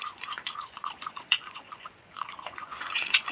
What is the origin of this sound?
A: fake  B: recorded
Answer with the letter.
A